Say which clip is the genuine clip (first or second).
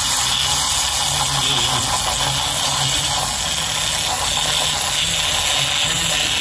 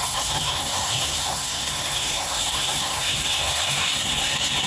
first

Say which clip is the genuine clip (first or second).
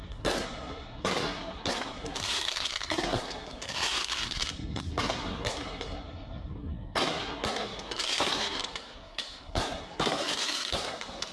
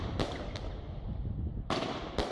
second